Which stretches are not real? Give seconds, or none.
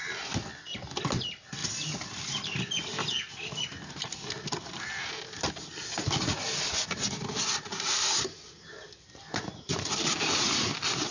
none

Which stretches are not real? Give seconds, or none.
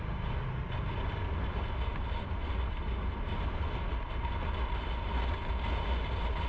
none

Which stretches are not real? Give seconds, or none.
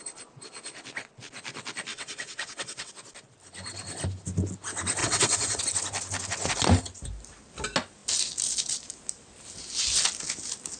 1.9-2.9 (vocoder, WaveNeXt); 5.0-5.6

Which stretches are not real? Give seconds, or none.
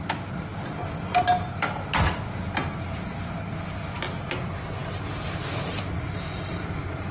none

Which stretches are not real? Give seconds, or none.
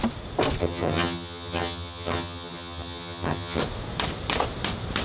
0.6-3.6 (vocoder, HiFi-GAN)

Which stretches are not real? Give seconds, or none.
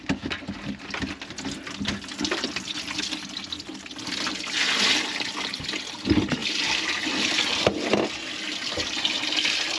3.7-4.3 (vocoder, BigVGAN v2); 6.4-8.1